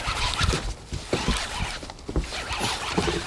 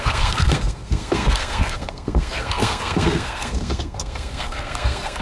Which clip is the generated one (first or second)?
second